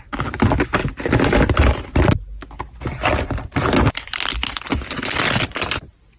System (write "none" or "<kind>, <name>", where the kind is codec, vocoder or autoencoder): none